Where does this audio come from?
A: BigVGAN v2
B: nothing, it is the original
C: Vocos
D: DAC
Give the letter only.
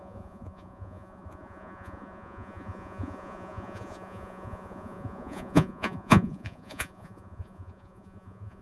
C